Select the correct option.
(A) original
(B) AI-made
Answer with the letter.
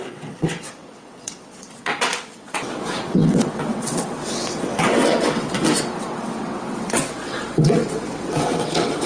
B